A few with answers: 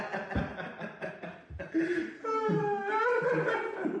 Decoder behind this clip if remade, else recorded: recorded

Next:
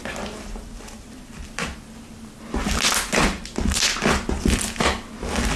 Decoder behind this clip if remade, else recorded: recorded